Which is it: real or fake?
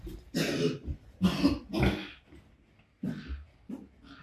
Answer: real